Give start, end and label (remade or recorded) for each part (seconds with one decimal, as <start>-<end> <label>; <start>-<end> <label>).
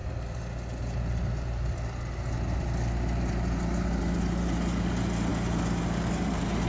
0.0-6.7 recorded